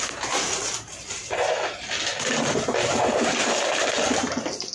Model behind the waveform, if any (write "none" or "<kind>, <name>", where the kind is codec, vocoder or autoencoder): none